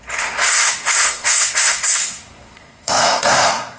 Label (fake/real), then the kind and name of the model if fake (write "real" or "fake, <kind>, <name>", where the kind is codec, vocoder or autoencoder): fake, codec, SNAC